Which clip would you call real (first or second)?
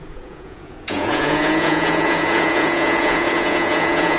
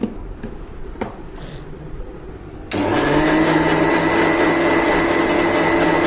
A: second